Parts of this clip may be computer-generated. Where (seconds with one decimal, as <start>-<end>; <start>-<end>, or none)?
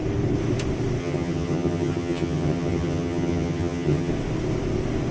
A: 1.0-4.1